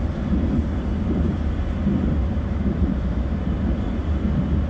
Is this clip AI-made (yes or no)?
no